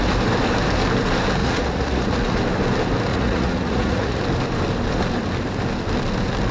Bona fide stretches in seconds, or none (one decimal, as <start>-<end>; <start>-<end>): 0.0-1.4; 2.4-3.1; 4.2-6.5